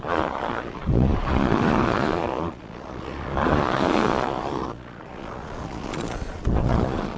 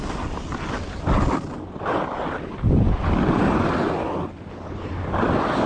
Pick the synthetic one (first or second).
first